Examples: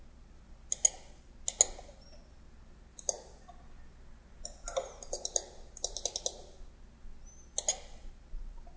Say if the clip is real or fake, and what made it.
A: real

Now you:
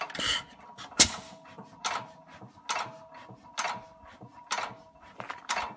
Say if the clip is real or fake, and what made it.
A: real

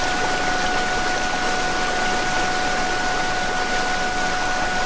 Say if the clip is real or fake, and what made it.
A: real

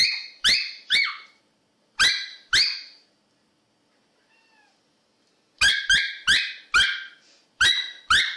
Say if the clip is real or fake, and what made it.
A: real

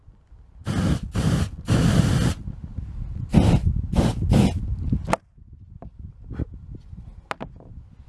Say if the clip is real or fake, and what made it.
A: real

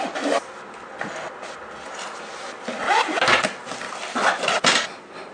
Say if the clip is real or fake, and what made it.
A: real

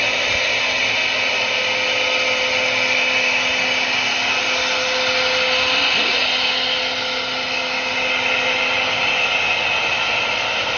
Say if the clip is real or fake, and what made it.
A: real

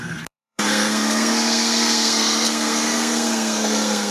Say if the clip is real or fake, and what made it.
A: fake, codec, SNAC